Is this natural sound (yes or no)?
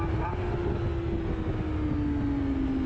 yes